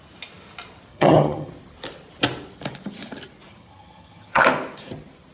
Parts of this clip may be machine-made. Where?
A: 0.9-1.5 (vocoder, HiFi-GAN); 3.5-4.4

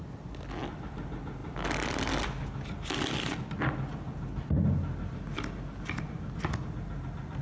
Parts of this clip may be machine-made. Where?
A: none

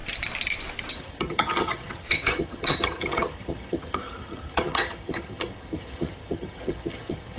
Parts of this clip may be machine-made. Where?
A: 0.9-7.4 (vocoder, HiFi-GAN)

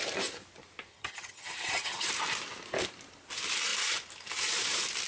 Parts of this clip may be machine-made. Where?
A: 0.9-2.1 (vocoder, HiFi-GAN)

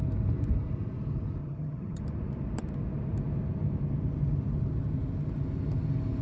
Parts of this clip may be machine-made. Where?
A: 1.4-2.0 (vocoder, HiFi-GAN)

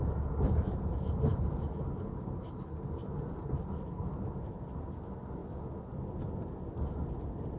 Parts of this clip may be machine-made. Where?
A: none

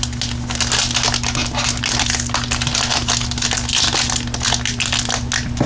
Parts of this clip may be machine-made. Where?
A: none